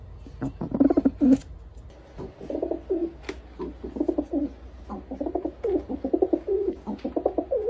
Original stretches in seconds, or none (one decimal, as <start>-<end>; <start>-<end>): 0.0-7.7